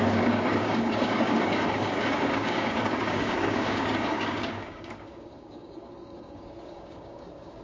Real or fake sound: fake